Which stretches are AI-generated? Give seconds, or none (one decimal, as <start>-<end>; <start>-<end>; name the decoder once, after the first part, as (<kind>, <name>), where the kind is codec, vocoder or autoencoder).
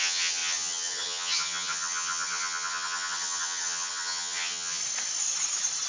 0.0-4.8 (vocoder, HiFi-GAN)